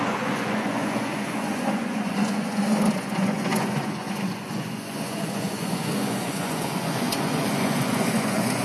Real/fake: fake